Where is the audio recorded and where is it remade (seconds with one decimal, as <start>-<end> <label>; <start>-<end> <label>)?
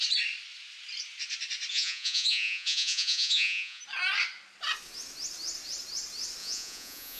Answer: 0.0-1.7 recorded; 1.7-3.8 remade; 3.8-6.4 recorded; 6.4-7.2 remade